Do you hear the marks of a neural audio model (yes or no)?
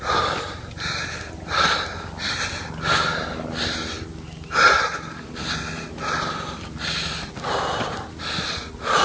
no